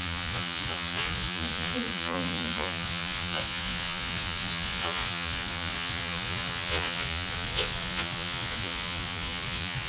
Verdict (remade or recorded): remade